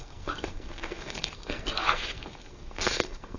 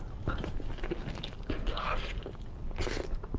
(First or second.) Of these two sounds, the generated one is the first